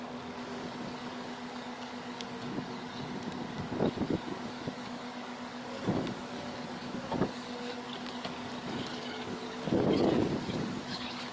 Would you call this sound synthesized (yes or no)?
yes